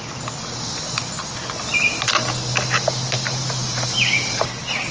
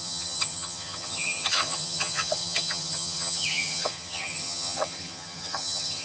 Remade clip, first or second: second